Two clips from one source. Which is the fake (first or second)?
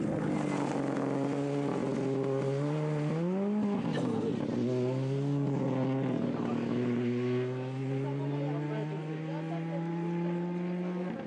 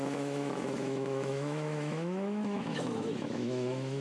second